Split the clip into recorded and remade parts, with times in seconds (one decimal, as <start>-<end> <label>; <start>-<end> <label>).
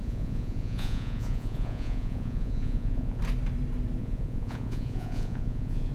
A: 0.0-3.2 remade; 3.2-4.0 recorded; 4.0-5.9 remade